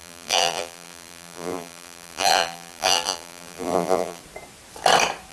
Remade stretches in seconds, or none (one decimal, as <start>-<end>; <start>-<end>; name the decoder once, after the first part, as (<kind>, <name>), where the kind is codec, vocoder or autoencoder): 0.0-4.2 (vocoder, BigVGAN v2)